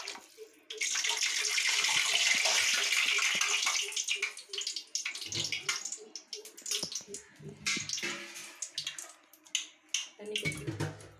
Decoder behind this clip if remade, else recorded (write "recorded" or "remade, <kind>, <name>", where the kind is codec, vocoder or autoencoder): recorded